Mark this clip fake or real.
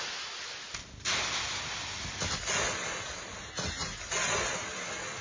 real